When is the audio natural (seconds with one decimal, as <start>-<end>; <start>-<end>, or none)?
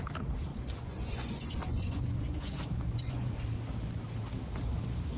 0.0-0.5; 3.4-5.2